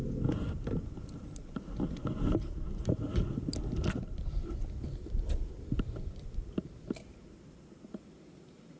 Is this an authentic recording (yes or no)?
yes